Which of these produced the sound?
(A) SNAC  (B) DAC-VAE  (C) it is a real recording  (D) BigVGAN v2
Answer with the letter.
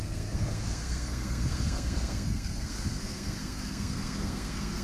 A